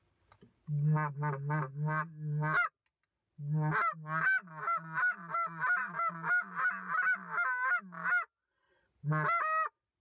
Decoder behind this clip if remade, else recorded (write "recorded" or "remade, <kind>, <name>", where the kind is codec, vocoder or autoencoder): recorded